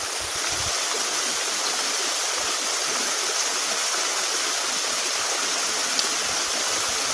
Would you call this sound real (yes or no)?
yes